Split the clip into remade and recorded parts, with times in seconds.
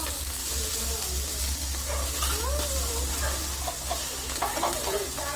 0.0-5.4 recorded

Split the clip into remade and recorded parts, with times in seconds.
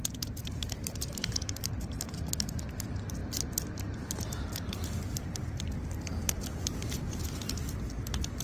0.0-0.4 recorded; 0.4-2.3 remade; 2.3-3.2 recorded; 3.2-4.3 remade; 4.3-8.4 recorded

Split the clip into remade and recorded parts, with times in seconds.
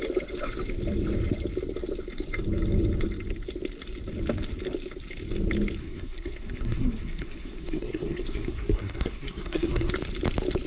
0.0-5.8 recorded; 5.8-9.9 remade; 9.9-10.7 recorded